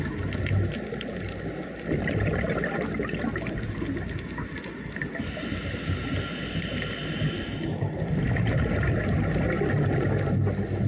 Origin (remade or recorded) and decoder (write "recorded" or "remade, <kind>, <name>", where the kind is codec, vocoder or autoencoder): recorded